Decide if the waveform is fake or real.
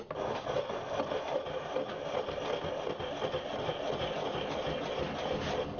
real